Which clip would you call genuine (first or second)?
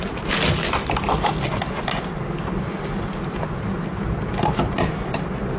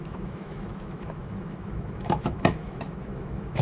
first